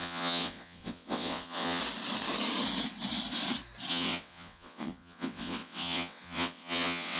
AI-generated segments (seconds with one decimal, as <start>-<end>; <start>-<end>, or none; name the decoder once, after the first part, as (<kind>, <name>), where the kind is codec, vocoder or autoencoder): 0.0-1.8 (vocoder, WaveNeXt); 3.9-7.2